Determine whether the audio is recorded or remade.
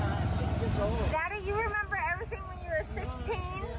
recorded